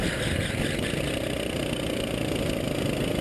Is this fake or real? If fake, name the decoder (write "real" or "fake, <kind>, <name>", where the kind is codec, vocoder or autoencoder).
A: real